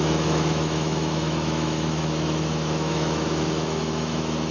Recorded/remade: remade